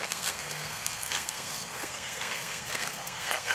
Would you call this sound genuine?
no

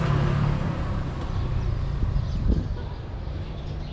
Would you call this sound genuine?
yes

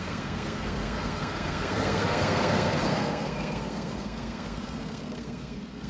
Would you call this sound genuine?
no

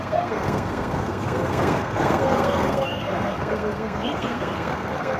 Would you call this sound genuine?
no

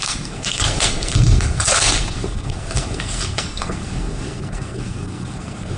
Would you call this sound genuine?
no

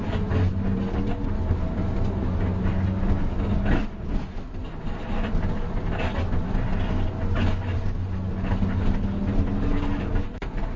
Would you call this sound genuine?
yes